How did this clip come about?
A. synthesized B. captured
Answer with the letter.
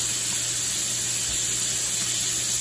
B